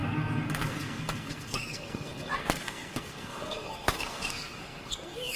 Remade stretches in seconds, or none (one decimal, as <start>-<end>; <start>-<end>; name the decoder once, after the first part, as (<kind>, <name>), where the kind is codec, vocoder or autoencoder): 0.0-5.4 (codec, SNAC)